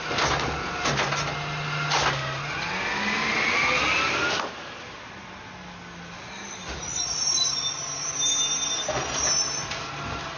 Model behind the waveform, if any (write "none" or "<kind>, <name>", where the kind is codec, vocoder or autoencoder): none